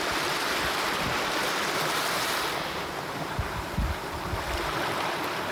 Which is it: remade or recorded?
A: recorded